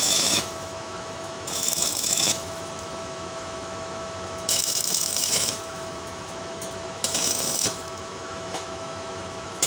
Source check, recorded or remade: remade